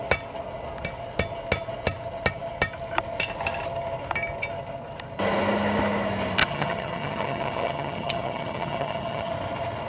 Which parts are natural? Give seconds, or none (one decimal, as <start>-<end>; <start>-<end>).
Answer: 0.0-6.4; 9.3-9.9